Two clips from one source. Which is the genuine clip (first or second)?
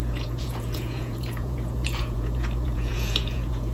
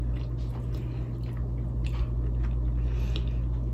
second